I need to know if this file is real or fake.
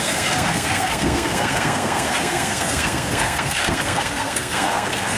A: fake